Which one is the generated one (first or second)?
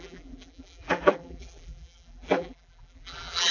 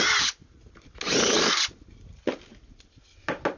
first